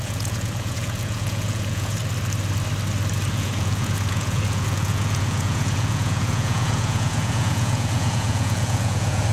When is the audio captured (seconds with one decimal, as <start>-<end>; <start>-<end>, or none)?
2.0-3.3